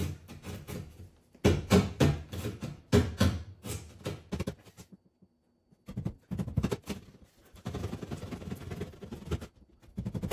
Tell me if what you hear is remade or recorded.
recorded